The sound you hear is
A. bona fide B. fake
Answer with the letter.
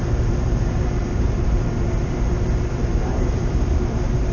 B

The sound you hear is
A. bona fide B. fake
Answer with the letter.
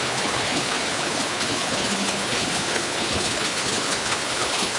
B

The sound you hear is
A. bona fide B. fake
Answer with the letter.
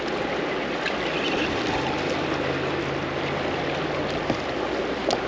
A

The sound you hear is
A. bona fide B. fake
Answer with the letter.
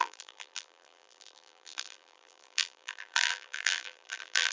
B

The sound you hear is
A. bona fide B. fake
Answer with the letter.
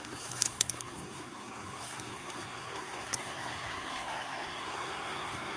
B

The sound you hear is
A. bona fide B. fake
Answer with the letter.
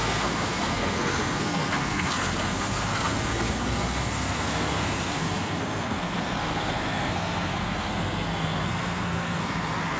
B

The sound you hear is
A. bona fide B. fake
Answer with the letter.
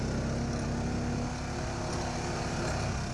A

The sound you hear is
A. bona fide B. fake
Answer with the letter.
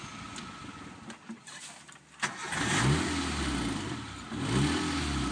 A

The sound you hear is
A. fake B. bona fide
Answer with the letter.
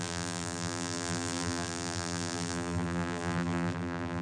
A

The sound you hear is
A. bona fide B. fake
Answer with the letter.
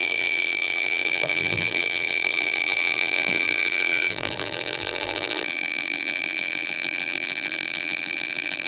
B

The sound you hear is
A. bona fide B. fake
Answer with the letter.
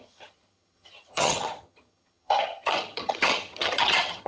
B